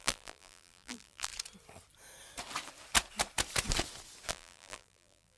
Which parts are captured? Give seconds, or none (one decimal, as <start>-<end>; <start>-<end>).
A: 1.3-4.3